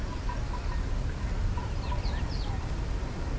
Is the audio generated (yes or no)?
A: no